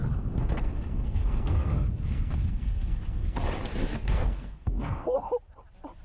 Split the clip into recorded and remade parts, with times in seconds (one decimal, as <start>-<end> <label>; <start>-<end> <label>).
0.0-3.4 remade; 3.4-3.9 recorded; 3.9-5.3 remade; 5.3-6.0 recorded